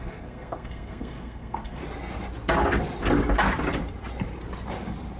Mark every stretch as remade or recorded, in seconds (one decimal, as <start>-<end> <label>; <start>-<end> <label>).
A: 0.0-1.8 remade; 1.8-5.2 recorded